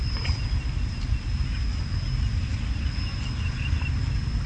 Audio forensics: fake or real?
real